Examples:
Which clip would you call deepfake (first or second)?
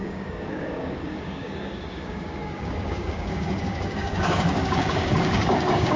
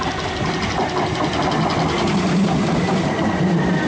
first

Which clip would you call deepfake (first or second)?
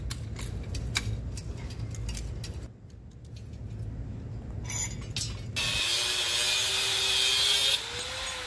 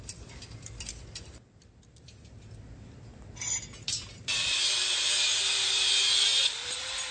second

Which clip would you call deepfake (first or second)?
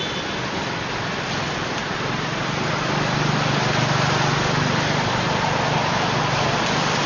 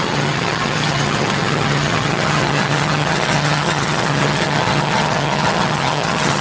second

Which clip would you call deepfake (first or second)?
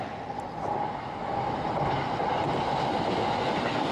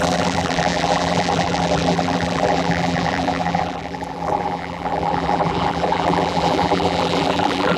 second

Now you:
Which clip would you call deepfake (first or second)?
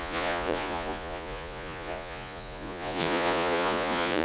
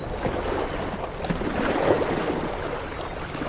first